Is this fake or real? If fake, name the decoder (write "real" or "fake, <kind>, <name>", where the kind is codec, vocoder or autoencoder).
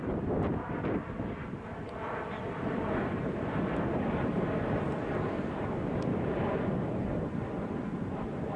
real